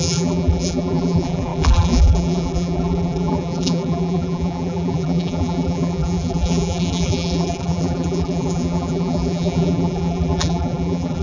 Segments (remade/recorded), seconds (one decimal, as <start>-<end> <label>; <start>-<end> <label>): 0.0-11.2 remade